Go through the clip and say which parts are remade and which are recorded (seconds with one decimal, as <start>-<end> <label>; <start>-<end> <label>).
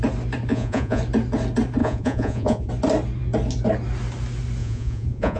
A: 0.0-0.5 recorded; 0.5-1.0 remade; 1.0-1.8 recorded; 1.8-2.7 remade; 2.7-4.6 recorded; 4.6-5.4 remade